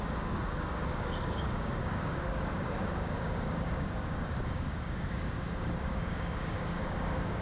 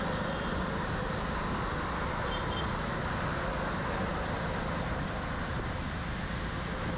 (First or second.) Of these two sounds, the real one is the second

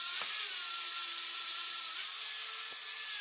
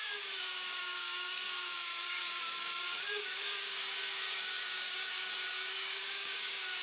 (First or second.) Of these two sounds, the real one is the first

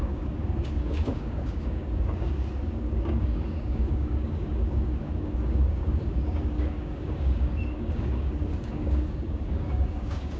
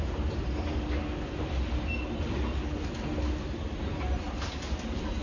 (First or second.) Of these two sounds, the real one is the second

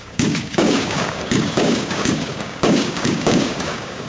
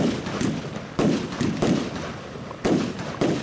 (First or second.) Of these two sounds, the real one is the second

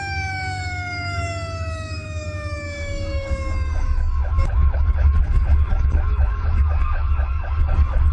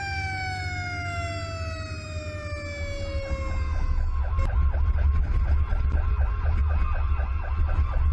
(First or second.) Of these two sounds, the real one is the second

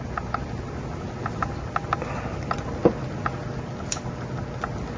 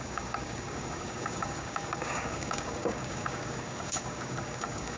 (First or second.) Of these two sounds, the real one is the first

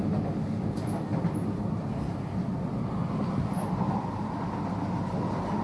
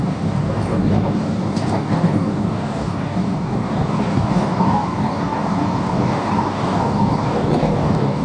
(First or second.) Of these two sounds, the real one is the first